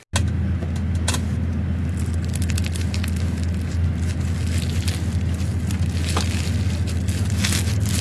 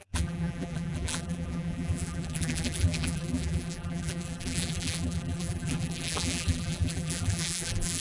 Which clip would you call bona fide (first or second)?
first